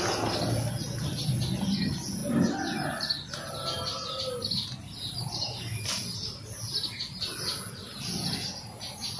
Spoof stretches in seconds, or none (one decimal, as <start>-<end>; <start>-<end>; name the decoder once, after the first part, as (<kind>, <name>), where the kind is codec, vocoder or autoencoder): none